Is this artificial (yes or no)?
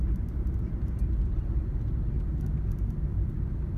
no